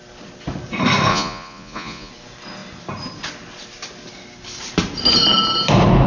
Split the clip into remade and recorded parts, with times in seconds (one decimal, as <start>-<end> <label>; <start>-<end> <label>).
0.0-1.1 recorded; 1.1-2.1 remade; 2.1-6.1 recorded